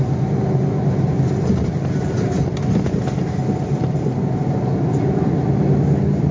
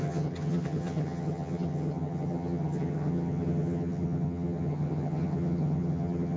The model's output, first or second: second